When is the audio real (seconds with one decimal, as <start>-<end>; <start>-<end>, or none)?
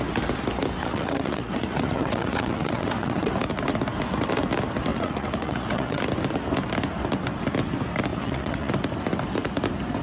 0.0-0.8; 3.3-4.9; 6.0-8.1; 8.7-10.0